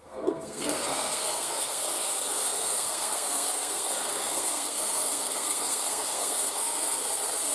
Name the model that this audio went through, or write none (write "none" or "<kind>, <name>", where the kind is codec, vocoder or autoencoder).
codec, SNAC